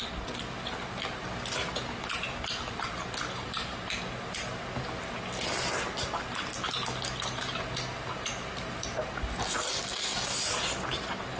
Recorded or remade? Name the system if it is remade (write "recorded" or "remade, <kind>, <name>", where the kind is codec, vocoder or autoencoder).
recorded